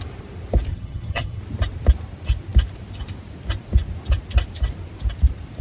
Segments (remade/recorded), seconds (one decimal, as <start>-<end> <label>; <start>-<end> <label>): 0.0-0.7 recorded; 0.7-1.4 remade; 1.4-5.6 recorded